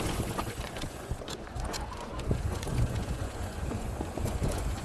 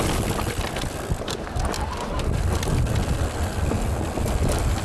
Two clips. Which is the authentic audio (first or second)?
second